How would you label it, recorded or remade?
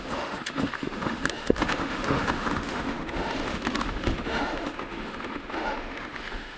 remade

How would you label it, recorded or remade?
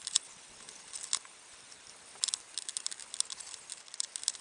recorded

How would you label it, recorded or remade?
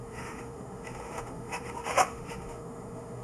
remade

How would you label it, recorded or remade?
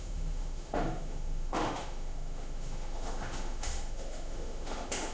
remade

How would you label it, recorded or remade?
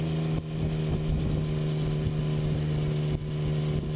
recorded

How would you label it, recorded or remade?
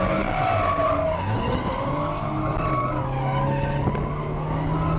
recorded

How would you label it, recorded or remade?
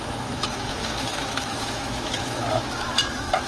remade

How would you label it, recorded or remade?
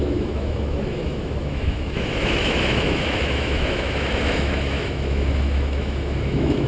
remade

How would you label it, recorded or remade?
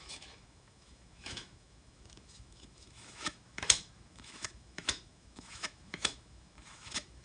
remade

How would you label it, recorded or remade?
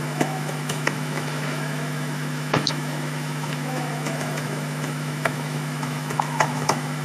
remade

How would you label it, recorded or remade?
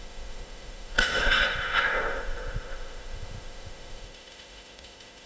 remade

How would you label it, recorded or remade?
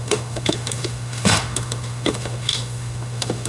remade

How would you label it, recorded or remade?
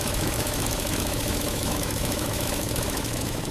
remade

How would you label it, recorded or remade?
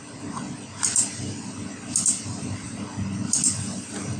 recorded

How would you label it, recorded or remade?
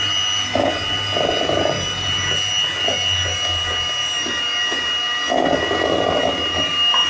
recorded